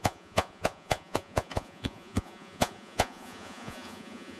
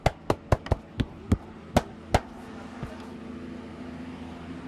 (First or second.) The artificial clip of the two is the first